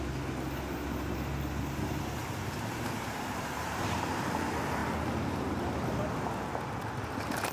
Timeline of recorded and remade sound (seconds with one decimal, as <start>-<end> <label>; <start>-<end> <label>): 0.0-2.2 recorded; 2.2-4.1 remade; 4.1-7.5 recorded